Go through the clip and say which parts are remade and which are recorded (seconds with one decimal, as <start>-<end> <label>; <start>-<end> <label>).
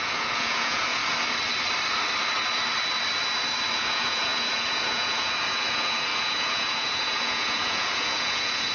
0.0-1.0 remade; 1.0-3.7 recorded; 3.7-8.7 remade